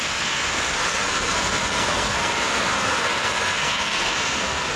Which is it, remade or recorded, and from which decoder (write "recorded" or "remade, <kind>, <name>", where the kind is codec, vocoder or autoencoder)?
remade, codec, SNAC